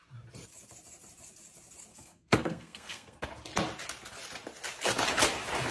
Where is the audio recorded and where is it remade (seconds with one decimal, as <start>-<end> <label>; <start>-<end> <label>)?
0.0-1.9 recorded; 1.9-3.3 remade; 3.3-5.7 recorded